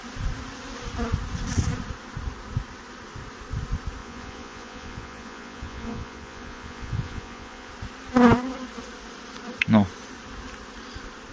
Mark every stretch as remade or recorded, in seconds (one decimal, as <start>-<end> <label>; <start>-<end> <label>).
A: 0.0-4.0 recorded; 4.0-7.7 remade; 7.7-11.3 recorded